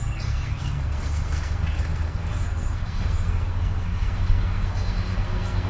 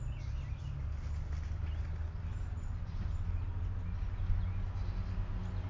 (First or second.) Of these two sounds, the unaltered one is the second